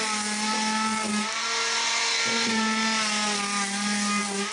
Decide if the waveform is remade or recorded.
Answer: recorded